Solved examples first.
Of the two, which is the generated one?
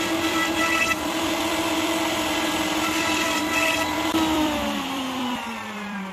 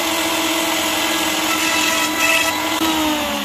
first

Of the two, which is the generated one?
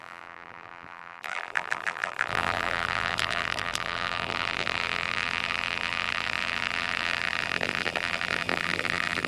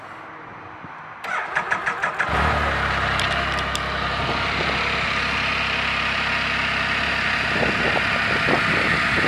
first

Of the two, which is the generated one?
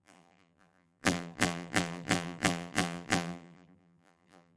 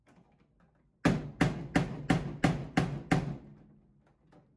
first